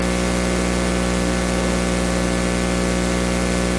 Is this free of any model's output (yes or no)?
yes